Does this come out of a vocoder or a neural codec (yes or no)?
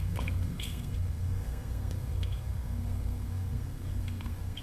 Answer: yes